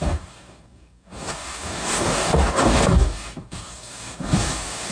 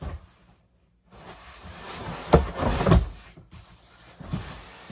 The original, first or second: second